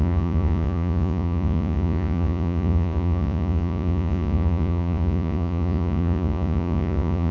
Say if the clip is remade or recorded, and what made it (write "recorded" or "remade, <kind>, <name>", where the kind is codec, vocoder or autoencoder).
remade, vocoder, Vocos